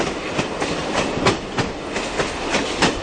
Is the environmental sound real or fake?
real